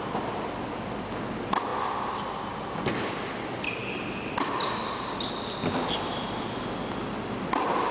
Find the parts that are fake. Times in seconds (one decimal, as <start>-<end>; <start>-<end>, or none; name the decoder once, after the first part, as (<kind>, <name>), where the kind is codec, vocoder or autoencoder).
none